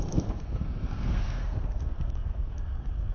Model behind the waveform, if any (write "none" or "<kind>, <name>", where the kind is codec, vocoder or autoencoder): codec, SNAC